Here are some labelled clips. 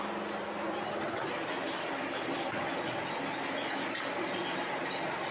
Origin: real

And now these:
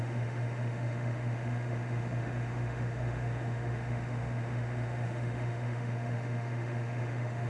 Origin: fake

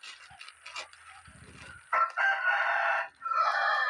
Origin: real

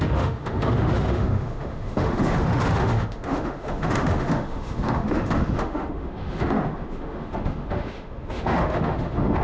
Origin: fake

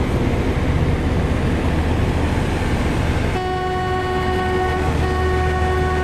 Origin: real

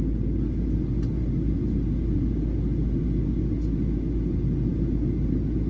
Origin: real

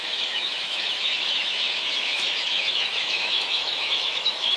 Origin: fake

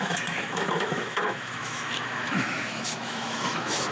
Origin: fake